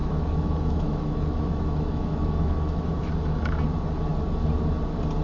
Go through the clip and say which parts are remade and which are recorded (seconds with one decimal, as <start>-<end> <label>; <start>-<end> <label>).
0.0-3.1 remade; 3.1-5.2 recorded